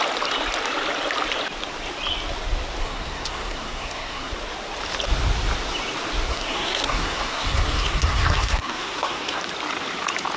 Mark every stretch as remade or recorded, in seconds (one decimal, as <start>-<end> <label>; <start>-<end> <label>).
0.0-2.8 recorded; 2.8-4.3 remade; 4.3-6.3 recorded; 6.3-9.4 remade; 9.4-10.4 recorded